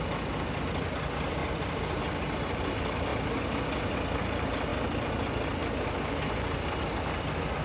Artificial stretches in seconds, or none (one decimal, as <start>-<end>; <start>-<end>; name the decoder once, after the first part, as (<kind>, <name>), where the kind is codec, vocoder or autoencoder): none